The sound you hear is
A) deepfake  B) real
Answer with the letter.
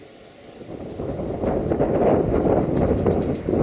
B